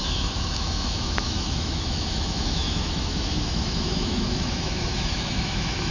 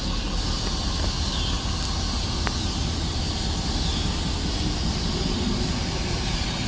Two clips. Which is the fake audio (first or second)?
first